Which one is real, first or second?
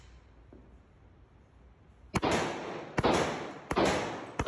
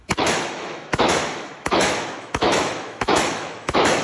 first